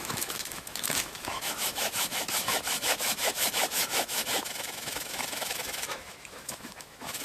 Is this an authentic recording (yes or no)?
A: no